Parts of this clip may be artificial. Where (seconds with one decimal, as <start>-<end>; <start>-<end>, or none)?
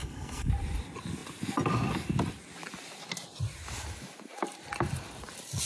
0.0-0.5